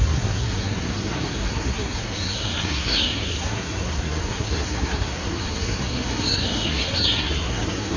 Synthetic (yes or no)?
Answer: yes